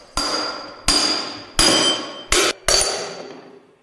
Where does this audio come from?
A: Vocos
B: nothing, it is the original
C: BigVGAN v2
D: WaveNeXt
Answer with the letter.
B